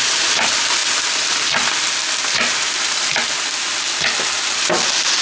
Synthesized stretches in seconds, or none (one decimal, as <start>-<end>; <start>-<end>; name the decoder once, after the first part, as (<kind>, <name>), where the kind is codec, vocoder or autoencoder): 0.0-0.8 (vocoder, BigVGAN v2); 2.3-3.1; 4.6-5.2